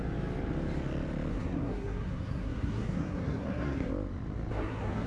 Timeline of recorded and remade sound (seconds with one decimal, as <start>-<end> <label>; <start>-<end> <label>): 0.0-1.3 recorded; 1.3-3.9 remade; 3.9-4.5 recorded; 4.5-5.1 remade